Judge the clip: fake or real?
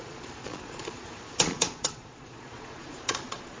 fake